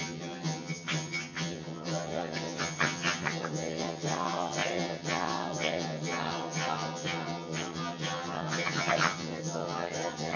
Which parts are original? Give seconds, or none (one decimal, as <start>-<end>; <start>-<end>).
none